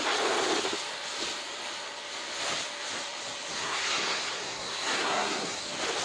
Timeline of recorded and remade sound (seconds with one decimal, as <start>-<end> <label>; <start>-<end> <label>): 0.0-3.6 recorded; 3.6-5.6 remade; 5.6-6.0 recorded